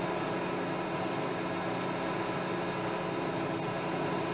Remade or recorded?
recorded